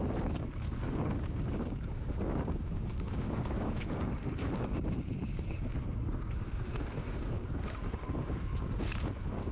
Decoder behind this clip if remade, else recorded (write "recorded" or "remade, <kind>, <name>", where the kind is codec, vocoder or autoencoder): remade, codec, DAC